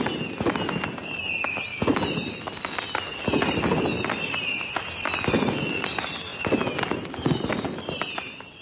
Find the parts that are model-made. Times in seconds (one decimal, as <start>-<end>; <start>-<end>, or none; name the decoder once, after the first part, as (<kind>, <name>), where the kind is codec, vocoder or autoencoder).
none